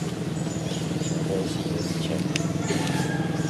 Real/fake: real